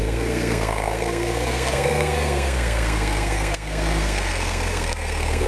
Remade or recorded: remade